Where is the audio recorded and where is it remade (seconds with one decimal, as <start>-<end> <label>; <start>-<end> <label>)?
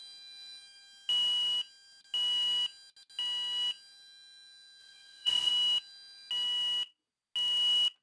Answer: 0.0-4.8 recorded; 4.8-5.5 remade; 5.5-8.0 recorded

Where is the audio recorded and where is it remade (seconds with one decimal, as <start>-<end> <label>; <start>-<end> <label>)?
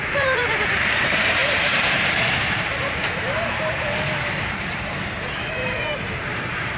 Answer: 0.0-6.8 remade